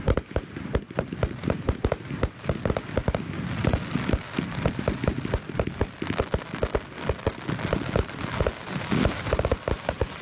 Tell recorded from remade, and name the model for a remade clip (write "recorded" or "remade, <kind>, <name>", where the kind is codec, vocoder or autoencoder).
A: recorded